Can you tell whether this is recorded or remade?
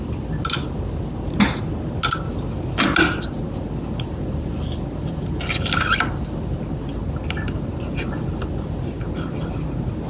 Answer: recorded